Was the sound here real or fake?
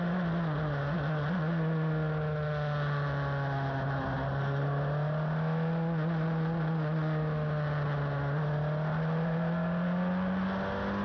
real